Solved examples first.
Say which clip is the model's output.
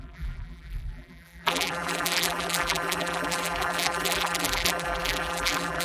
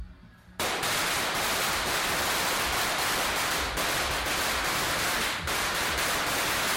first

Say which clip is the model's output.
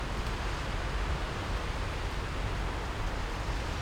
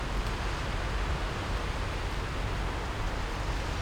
first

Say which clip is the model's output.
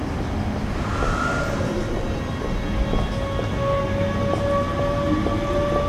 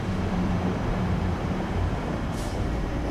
second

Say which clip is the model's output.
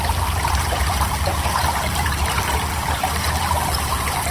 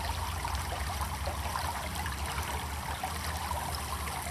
first